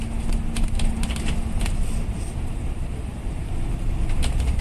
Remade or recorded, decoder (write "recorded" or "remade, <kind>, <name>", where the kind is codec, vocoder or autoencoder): recorded